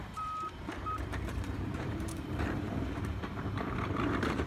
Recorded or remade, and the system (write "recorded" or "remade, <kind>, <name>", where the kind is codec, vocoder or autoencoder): remade, vocoder, BigVGAN v2